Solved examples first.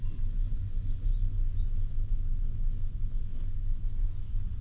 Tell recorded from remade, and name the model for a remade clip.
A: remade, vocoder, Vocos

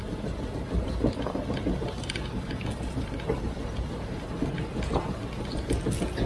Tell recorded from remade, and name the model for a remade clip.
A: recorded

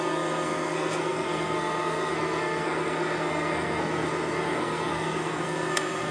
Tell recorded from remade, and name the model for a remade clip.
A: remade, codec, SNAC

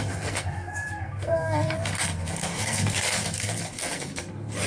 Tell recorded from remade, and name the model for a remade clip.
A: remade, codec, SNAC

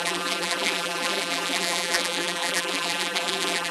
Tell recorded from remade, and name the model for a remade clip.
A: remade, vocoder, BigVGAN v2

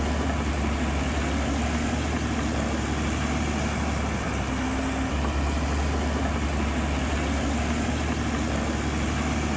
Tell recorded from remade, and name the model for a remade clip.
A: recorded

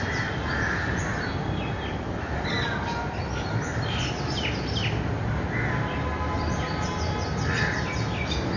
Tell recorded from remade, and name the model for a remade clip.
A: recorded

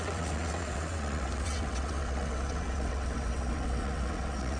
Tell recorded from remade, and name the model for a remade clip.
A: remade, vocoder, WaveNeXt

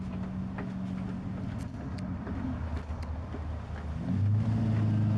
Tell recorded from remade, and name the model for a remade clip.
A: recorded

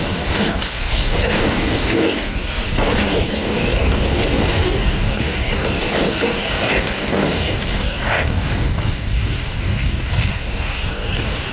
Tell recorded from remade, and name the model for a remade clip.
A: remade, codec, DAC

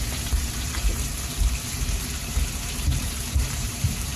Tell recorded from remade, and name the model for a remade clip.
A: remade, vocoder, BigVGAN v2